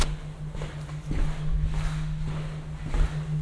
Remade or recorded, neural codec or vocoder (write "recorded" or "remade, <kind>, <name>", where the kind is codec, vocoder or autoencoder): recorded